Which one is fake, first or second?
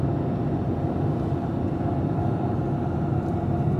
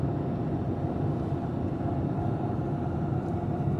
second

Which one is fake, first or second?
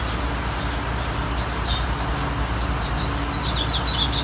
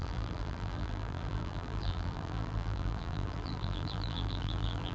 second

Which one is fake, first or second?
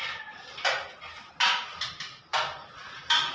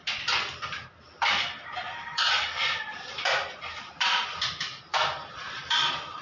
second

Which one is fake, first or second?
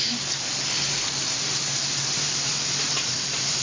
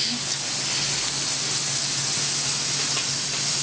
first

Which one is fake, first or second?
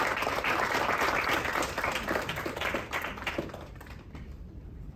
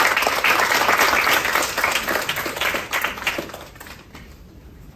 first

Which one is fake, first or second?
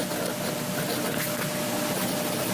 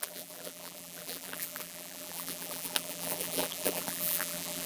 second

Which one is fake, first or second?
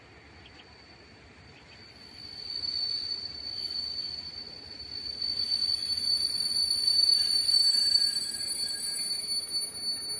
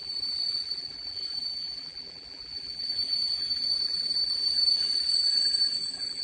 second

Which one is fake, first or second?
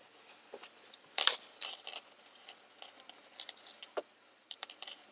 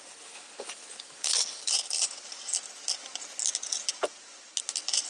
first